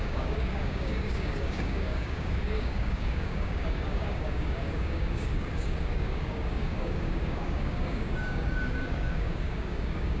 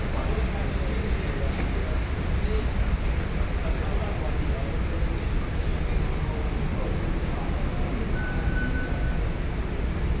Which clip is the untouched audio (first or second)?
second